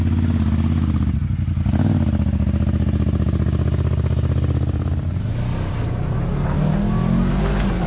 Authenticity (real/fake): real